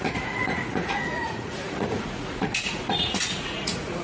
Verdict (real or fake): fake